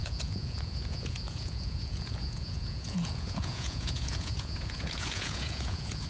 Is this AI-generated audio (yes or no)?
yes